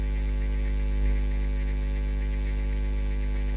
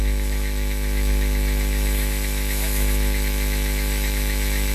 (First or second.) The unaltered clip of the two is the first